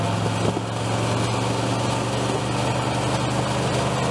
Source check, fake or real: real